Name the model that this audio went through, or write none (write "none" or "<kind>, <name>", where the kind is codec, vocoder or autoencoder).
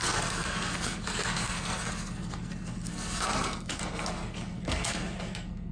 codec, SNAC